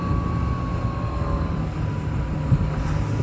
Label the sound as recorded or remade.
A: recorded